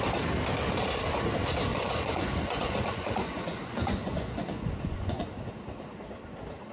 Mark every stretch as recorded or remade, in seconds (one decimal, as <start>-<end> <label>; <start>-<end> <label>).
0.0-1.7 recorded; 1.7-5.4 remade; 5.4-6.7 recorded